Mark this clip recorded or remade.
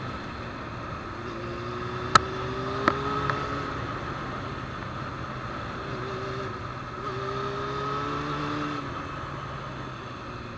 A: recorded